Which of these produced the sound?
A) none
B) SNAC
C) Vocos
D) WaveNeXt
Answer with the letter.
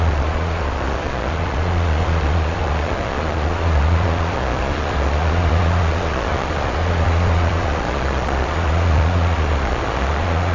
C